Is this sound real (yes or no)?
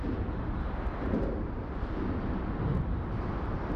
yes